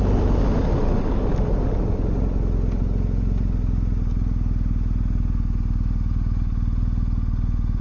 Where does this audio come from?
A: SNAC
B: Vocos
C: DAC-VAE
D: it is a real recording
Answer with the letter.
D